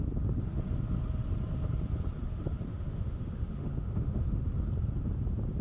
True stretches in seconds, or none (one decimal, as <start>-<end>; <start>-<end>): 0.0-2.7; 4.5-5.6